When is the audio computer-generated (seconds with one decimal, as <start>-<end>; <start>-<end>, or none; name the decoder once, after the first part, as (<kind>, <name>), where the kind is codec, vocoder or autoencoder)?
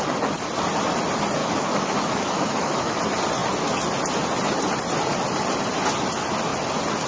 1.4-3.0 (autoencoder, DAC-VAE)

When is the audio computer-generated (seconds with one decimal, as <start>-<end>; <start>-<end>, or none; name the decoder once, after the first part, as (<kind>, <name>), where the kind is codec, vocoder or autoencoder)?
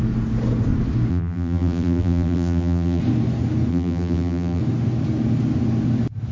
1.1-3.0 (vocoder, BigVGAN v2); 3.7-4.6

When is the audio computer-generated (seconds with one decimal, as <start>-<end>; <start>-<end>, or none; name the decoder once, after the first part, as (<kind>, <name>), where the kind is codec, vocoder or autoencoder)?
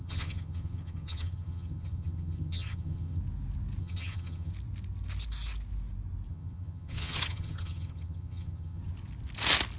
0.0-3.2 (vocoder, HiFi-GAN); 3.8-4.5; 6.3-8.8